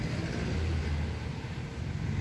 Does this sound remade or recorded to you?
recorded